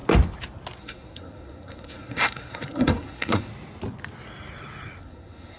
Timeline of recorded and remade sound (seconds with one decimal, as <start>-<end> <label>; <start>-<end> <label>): 0.0-0.8 recorded; 0.8-3.5 remade; 3.5-5.0 recorded; 5.0-5.6 remade